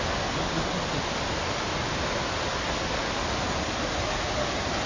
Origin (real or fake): real